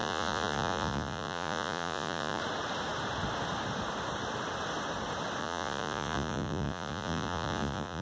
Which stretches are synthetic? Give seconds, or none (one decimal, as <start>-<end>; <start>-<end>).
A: 0.0-2.4; 5.4-8.0